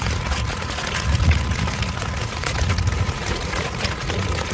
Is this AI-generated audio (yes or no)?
yes